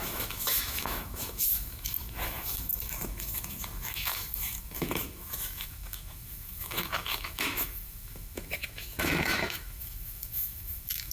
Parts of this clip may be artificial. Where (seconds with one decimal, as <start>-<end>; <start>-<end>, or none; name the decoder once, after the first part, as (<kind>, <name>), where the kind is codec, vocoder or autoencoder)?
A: 0.0-11.1 (autoencoder, DAC-VAE)

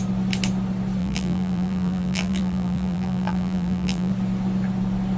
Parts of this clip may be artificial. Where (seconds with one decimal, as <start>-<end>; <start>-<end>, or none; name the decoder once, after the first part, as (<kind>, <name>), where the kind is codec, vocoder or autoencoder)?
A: 1.0-4.1 (vocoder, BigVGAN v2)

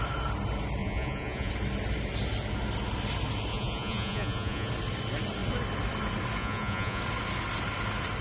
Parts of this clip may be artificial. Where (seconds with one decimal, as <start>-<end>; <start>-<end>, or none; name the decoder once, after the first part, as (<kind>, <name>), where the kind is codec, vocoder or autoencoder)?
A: 0.8-1.5 (vocoder, Vocos); 3.5-4.7; 6.4-7.0

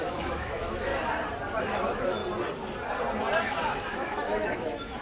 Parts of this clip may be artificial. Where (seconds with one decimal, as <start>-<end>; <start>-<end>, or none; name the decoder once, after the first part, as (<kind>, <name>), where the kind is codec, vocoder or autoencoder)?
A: 0.0-0.9 (autoencoder, DAC-VAE); 1.6-2.2; 3.4-5.0

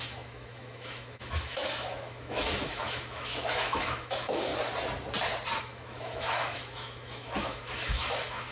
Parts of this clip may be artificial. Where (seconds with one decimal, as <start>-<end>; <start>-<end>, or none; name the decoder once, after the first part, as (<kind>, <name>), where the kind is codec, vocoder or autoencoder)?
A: 0.0-4.5 (autoencoder, DAC-VAE); 5.6-8.5

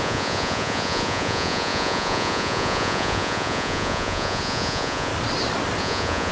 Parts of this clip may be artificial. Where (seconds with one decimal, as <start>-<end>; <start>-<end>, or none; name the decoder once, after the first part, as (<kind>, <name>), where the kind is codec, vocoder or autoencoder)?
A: 0.0-5.1 (vocoder, Vocos); 5.8-6.3